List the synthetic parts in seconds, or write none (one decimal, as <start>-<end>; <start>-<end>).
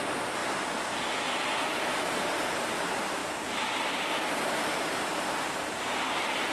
0.0-0.4; 1.6-3.2; 5.3-6.5